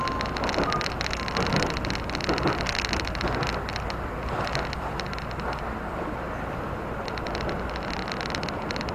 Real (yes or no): yes